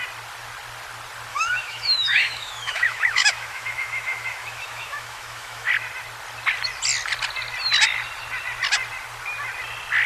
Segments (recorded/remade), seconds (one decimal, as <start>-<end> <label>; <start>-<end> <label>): 0.0-1.3 recorded; 1.3-5.7 remade; 5.7-10.1 recorded